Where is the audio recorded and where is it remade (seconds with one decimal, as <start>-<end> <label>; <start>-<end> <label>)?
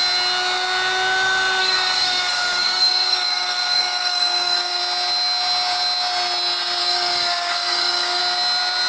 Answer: 0.0-1.6 recorded; 1.6-4.8 remade; 4.8-6.8 recorded; 6.8-8.2 remade; 8.2-8.9 recorded